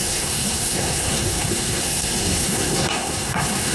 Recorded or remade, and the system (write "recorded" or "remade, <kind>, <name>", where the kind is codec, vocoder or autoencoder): remade, codec, SNAC